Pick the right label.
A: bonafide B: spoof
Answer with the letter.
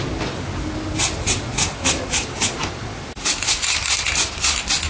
A